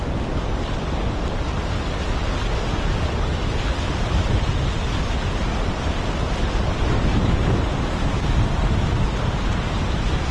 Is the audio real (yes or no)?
yes